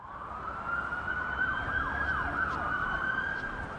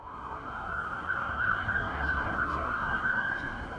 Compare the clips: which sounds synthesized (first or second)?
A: second